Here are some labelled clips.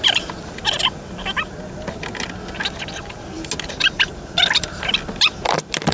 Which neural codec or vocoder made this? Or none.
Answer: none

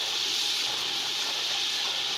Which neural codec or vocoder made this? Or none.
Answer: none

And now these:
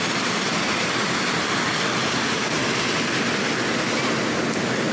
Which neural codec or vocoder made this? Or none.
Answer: none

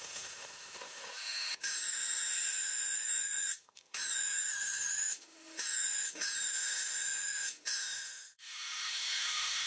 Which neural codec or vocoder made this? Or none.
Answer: autoencoder, DAC-VAE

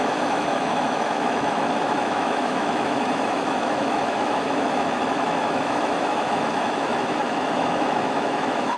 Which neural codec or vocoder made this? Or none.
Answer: autoencoder, DAC-VAE